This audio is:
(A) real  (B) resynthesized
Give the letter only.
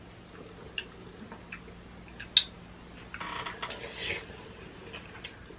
A